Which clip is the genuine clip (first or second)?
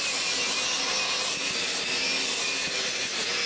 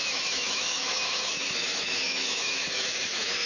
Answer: first